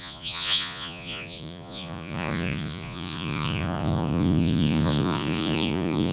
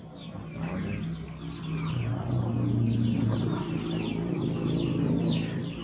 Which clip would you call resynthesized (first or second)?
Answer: first